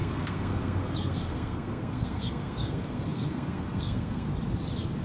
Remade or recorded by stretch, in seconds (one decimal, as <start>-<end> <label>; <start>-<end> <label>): 0.0-4.3 remade; 4.3-5.0 recorded